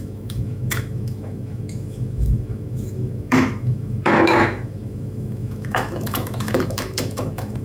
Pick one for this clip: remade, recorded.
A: remade